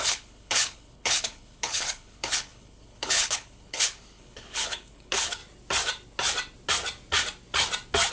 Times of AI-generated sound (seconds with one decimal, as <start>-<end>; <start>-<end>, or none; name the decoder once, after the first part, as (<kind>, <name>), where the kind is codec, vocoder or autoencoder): 0.0-5.4 (codec, HILCodec)